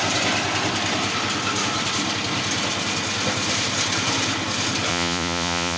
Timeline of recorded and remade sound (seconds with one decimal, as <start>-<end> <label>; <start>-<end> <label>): 0.0-4.9 recorded; 4.9-5.8 remade